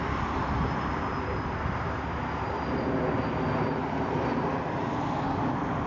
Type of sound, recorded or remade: recorded